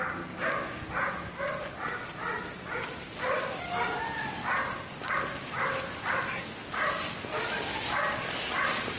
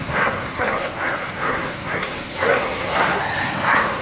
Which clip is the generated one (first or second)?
second